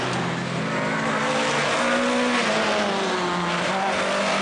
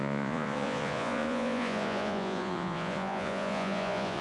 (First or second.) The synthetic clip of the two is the second